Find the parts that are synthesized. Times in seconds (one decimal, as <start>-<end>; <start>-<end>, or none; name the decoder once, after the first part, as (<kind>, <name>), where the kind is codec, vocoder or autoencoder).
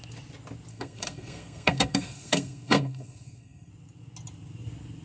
0.7-3.7 (codec, SNAC)